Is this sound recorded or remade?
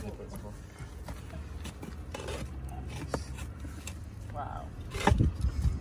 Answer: recorded